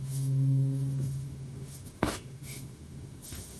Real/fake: fake